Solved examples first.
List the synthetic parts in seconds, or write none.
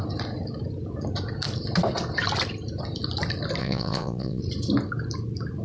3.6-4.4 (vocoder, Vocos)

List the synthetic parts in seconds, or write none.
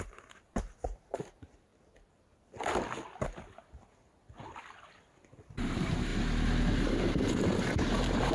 0.0-1.7 (vocoder, BigVGAN v2); 5.4-6.1; 6.9-8.3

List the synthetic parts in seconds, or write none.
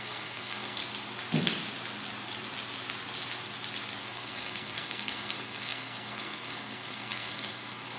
0.0-0.8 (codec, SNAC); 4.0-8.0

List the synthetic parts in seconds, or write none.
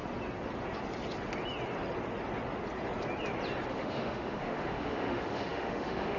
3.7-6.2 (autoencoder, DAC-VAE)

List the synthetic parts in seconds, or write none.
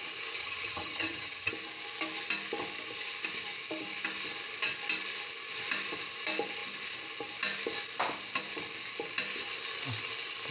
0.4-1.5 (vocoder, HiFi-GAN)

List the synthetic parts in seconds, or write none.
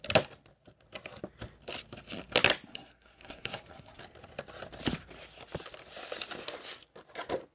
2.7-4.0 (codec, SNAC)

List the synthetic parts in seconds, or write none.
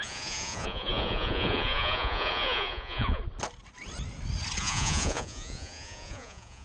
0.0-3.2 (vocoder, Vocos); 4.6-6.6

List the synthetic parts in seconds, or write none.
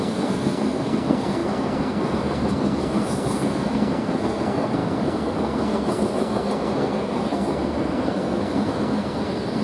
0.0-9.6 (codec, SNAC)